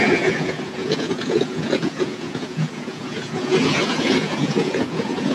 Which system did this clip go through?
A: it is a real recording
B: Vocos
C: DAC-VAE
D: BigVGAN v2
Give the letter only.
B